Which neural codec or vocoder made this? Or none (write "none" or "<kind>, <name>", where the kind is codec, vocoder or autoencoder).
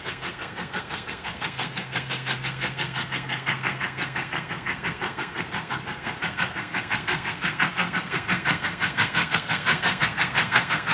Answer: codec, SNAC